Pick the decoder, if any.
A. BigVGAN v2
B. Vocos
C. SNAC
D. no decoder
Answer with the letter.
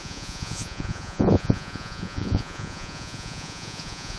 B